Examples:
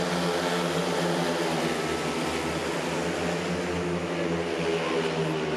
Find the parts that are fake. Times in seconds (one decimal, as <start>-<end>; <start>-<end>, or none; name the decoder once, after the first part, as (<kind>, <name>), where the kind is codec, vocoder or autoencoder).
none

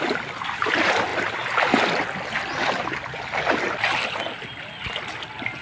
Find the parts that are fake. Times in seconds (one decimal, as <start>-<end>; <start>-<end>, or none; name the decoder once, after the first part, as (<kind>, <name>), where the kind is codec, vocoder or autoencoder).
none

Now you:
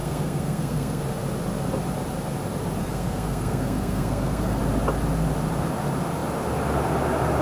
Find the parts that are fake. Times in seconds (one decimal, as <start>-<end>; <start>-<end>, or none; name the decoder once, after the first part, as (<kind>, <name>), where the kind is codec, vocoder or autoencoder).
0.0-1.0 (codec, SNAC); 2.8-4.6